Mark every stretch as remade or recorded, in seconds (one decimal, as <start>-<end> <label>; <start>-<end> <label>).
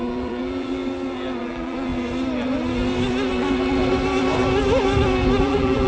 0.0-0.8 remade; 0.8-1.4 recorded; 1.4-1.9 remade; 1.9-5.4 recorded; 5.4-5.9 remade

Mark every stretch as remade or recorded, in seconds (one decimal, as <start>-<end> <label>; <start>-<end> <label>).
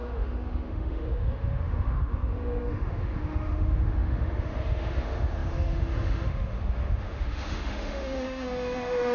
0.0-9.1 remade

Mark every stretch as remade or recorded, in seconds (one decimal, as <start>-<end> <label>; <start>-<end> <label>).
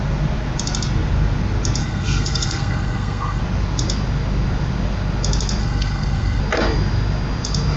0.0-1.8 recorded; 1.8-3.4 remade; 3.4-5.6 recorded; 5.6-6.4 remade; 6.4-7.8 recorded